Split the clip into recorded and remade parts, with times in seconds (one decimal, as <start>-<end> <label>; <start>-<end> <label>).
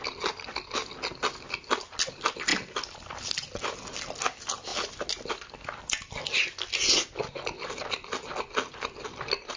0.0-9.6 recorded